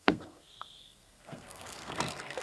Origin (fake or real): fake